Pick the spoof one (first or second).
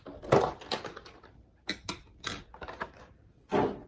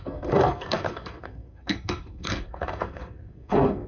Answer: second